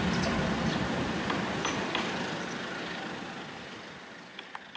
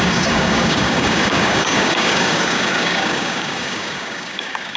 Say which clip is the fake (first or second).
second